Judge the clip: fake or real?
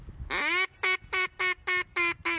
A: real